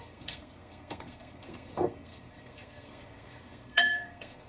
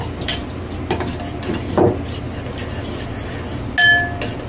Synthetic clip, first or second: first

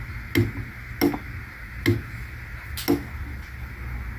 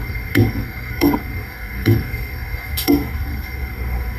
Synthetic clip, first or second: second